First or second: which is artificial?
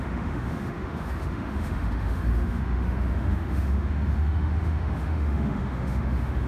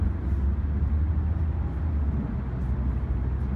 first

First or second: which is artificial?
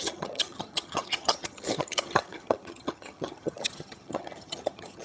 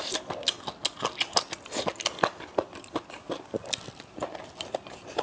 first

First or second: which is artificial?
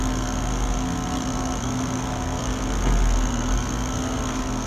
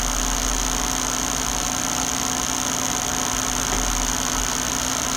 first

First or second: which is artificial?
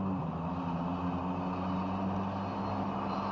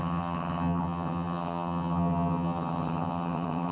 second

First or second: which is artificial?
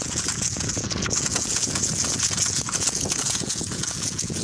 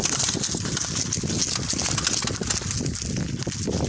first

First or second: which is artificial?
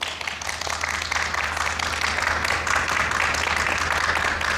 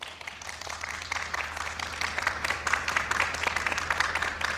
second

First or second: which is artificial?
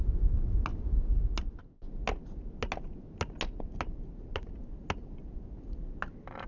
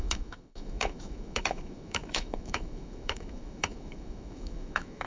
second